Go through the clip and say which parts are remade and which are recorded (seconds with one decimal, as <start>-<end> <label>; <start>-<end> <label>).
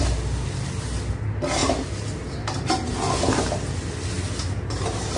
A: 0.0-5.2 recorded